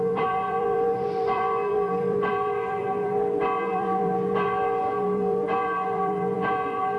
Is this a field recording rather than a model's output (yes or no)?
no